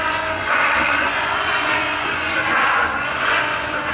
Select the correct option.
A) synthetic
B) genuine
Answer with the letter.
A